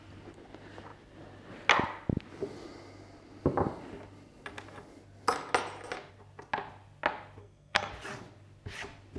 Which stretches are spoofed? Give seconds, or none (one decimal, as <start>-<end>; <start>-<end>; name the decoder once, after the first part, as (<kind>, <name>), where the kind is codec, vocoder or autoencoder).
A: 7.4-7.9 (codec, SNAC)